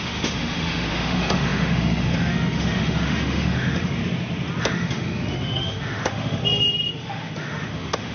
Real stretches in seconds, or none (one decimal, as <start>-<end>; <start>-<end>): 4.0-4.6; 6.4-6.9